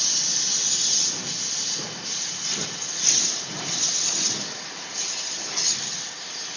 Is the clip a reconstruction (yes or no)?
no